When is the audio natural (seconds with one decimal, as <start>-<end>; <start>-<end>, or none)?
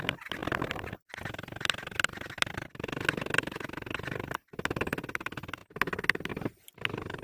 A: 0.0-0.4; 0.9-7.2